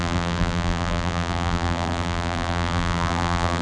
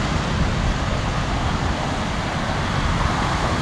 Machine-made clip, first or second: first